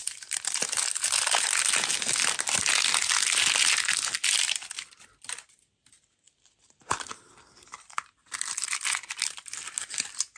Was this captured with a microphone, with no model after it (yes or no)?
yes